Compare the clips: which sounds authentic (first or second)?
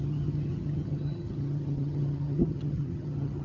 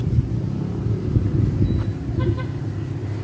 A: second